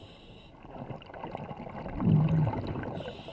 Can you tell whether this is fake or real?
real